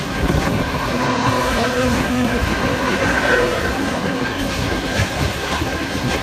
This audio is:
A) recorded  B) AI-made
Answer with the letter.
B